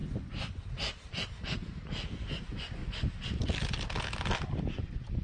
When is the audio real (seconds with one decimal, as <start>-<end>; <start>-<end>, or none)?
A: 0.0-2.4; 2.8-4.7